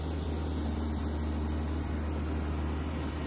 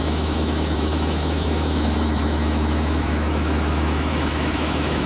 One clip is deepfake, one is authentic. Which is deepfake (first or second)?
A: second